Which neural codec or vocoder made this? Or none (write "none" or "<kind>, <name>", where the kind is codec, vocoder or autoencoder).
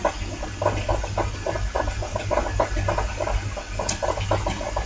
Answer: none